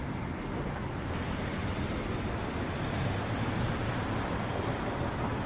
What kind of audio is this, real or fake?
real